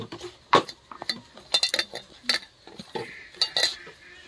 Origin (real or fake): real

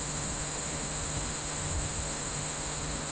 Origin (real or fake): fake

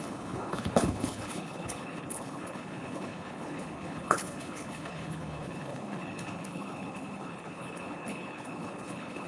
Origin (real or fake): fake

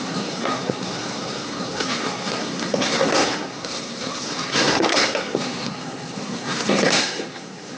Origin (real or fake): fake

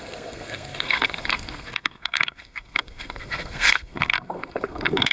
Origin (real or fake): fake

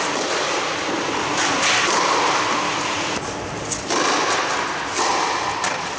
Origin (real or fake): real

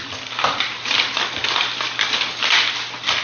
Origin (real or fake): real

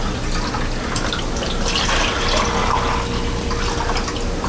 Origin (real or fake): real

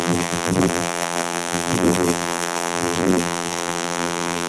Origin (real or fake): fake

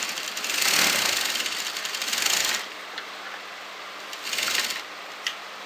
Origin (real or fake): real